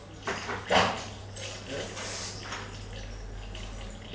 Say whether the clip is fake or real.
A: real